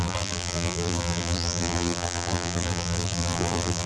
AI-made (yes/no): yes